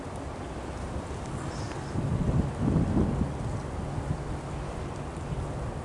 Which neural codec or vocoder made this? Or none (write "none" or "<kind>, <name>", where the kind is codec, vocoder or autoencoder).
none